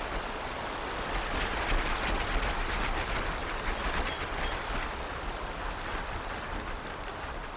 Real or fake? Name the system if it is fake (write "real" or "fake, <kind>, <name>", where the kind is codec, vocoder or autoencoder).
real